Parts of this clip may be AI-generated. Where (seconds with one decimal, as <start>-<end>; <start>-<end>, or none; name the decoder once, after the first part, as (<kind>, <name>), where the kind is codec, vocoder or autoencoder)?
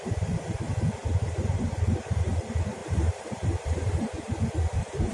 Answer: 1.0-2.3 (vocoder, BigVGAN v2); 2.8-4.1